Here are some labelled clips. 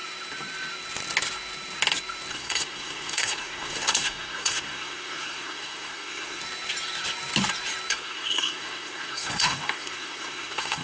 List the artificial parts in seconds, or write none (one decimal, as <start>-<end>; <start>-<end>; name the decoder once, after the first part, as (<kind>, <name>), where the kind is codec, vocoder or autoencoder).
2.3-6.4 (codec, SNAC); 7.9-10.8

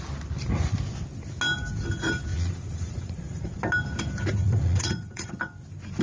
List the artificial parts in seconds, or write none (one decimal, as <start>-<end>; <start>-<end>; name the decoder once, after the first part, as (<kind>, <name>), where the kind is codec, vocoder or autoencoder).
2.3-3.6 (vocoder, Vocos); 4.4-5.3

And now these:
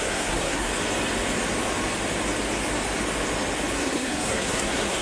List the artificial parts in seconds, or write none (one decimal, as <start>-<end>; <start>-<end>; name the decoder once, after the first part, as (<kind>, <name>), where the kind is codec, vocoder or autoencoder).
0.0-0.7 (codec, SNAC); 3.7-5.0

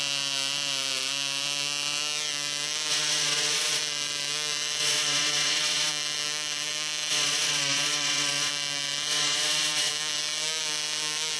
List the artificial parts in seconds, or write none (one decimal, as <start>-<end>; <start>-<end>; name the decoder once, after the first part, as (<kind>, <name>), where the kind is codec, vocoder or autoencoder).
2.9-3.8 (vocoder, WaveNeXt); 4.8-5.9; 7.1-8.5; 9.1-9.9

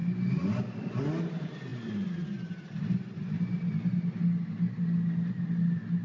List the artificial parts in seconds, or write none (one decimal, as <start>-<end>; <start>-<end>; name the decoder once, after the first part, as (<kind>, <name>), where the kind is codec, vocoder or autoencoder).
none

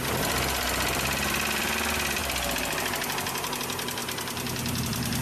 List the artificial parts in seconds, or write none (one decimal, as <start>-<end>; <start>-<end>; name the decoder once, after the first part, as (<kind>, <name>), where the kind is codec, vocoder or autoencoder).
0.0-5.2 (vocoder, BigVGAN v2)